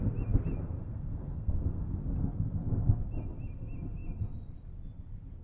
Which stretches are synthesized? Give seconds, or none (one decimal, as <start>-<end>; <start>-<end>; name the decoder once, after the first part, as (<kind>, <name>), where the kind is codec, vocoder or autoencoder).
0.8-2.0 (codec, SNAC)